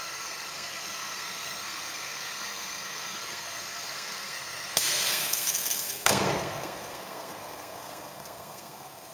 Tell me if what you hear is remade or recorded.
remade